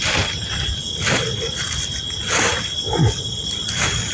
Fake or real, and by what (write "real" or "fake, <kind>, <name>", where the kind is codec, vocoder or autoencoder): real